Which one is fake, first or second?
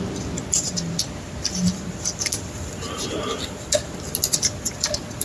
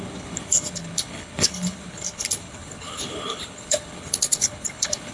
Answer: second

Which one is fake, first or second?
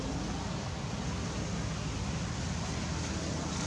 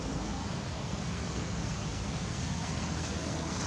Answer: second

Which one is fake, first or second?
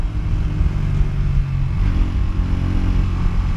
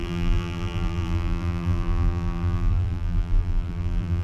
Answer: second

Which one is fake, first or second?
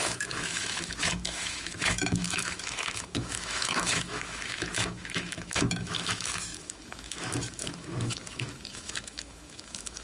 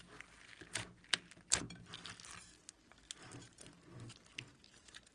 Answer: first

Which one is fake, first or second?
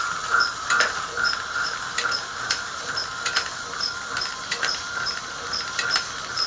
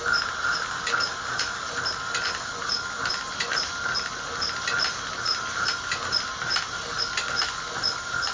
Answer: first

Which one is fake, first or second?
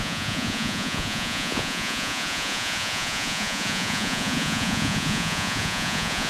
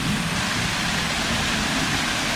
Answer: first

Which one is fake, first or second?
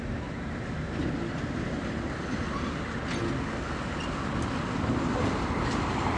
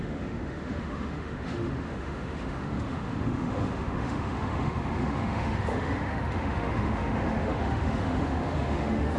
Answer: second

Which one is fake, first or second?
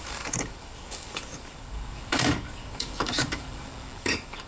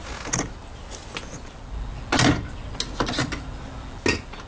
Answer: first